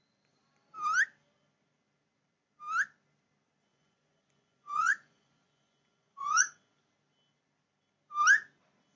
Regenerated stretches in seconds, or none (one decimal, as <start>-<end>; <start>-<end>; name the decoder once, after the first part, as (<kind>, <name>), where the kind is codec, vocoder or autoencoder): 3.7-6.8 (vocoder, Vocos)